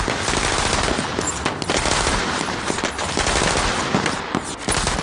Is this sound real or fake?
real